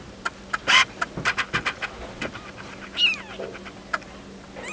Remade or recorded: recorded